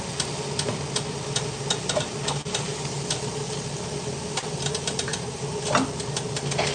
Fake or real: real